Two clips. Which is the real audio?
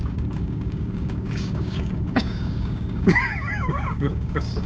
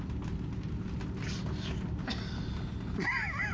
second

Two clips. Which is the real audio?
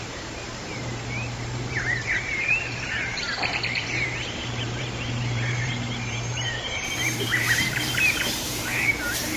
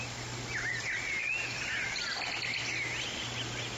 second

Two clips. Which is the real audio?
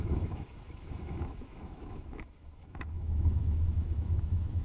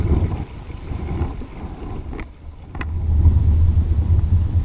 second